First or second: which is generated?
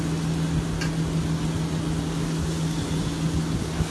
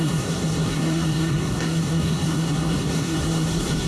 second